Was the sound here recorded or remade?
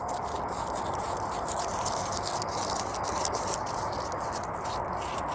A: recorded